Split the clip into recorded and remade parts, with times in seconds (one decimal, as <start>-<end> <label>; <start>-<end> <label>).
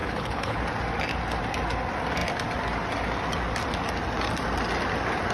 0.0-0.6 remade; 0.6-5.3 recorded